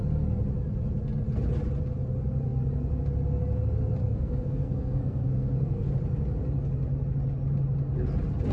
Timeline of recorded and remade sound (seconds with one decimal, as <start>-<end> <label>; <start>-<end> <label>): 0.0-4.0 recorded; 4.0-5.9 remade; 5.9-8.5 recorded